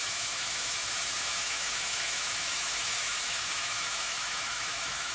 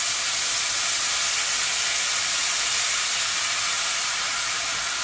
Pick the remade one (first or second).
first